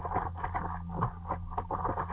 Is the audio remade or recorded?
recorded